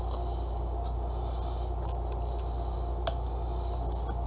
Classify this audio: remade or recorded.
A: recorded